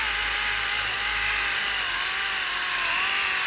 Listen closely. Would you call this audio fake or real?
real